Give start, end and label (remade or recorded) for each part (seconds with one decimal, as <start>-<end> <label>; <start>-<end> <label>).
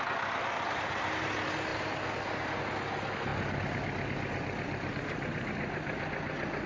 0.0-6.7 recorded